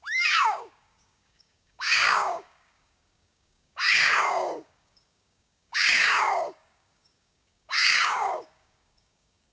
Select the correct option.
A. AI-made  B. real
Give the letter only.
A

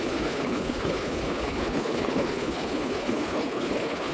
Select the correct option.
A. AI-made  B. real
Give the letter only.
A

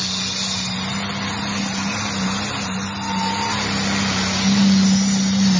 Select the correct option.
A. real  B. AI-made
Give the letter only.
A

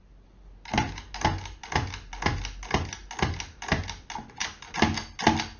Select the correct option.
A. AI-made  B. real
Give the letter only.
B